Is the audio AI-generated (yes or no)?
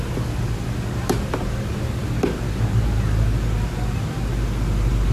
no